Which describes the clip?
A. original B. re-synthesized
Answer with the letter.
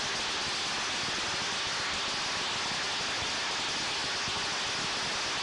A